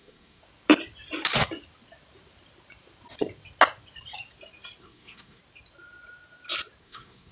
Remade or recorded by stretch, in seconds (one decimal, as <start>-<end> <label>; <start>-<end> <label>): 0.0-0.4 remade; 0.4-4.8 recorded; 4.8-5.4 remade; 5.4-6.8 recorded; 6.8-7.3 remade